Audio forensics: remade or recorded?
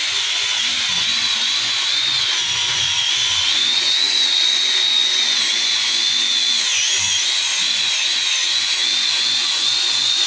remade